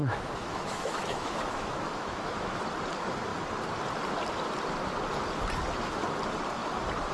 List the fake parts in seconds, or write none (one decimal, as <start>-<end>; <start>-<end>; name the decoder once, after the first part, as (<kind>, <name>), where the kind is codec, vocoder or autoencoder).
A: 0.0-2.6 (autoencoder, DAC-VAE)